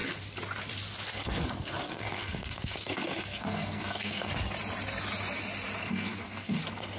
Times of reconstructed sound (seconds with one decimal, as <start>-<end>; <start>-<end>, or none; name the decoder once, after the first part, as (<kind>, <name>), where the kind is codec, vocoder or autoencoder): 1.1-4.3 (codec, SNAC); 5.8-6.6